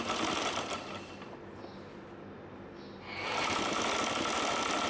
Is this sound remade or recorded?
recorded